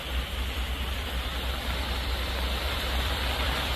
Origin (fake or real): fake